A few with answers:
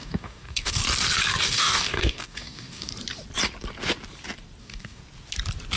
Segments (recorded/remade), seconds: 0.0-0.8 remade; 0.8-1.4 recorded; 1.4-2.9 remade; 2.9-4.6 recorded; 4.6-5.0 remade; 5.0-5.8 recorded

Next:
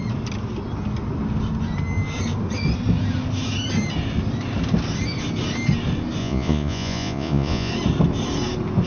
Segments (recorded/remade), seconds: 0.0-6.2 recorded; 6.2-7.7 remade; 7.7-8.9 recorded

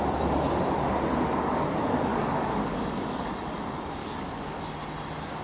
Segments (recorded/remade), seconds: 0.0-2.1 recorded; 2.1-3.3 remade; 3.3-4.0 recorded; 4.0-4.6 remade; 4.6-5.4 recorded

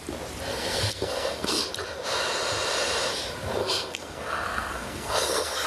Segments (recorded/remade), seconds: 0.0-0.5 recorded; 0.5-1.6 remade; 1.6-3.6 recorded; 3.6-5.7 remade

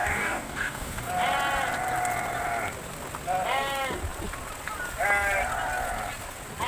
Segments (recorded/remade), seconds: 0.0-1.1 remade; 1.1-6.7 recorded

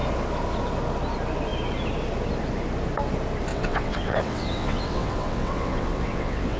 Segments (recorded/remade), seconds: 0.0-3.5 recorded; 3.5-6.6 remade

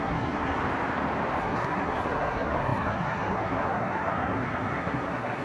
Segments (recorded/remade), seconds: 0.0-0.6 remade; 0.6-1.4 recorded; 1.4-5.4 remade

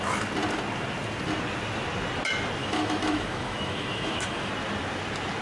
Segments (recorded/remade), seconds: 0.0-2.6 recorded; 2.6-4.5 remade; 4.5-5.4 recorded